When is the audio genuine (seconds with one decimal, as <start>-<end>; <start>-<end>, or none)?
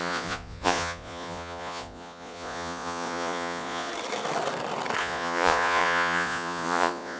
3.9-5.0